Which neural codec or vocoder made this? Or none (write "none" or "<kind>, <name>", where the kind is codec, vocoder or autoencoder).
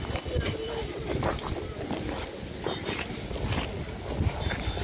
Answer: none